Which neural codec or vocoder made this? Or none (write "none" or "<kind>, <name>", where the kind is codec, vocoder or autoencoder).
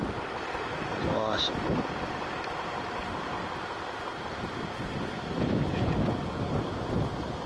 none